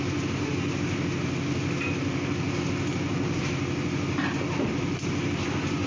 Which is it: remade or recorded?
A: recorded